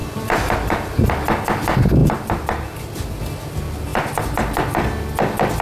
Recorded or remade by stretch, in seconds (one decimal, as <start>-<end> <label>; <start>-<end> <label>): 0.0-1.1 remade; 1.1-2.0 recorded; 2.0-3.2 remade; 3.2-3.9 recorded; 3.9-4.7 remade; 4.7-5.6 recorded